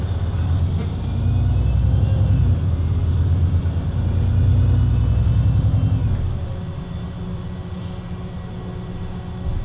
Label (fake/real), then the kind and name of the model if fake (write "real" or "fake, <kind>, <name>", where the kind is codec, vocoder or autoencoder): real